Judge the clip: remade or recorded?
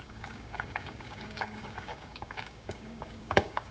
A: remade